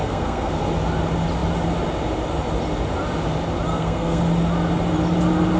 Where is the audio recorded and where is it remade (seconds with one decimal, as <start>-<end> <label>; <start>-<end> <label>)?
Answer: 0.0-0.6 remade; 0.6-3.7 recorded; 3.7-4.2 remade; 4.2-5.6 recorded